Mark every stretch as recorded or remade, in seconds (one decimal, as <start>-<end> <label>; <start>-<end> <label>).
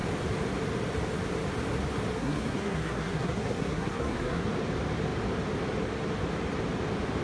0.0-2.2 recorded; 2.2-4.5 remade; 4.5-7.2 recorded